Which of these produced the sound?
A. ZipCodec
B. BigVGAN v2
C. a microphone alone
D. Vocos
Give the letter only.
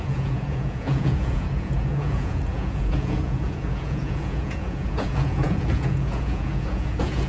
D